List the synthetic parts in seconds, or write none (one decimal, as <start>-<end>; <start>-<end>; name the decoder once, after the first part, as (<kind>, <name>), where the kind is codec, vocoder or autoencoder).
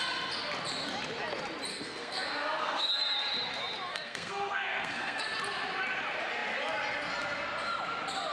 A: 1.7-2.9 (codec, SNAC); 3.9-5.2